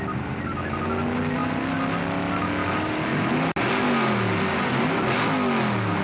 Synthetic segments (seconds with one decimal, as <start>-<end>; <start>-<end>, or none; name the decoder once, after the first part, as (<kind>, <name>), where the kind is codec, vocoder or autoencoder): none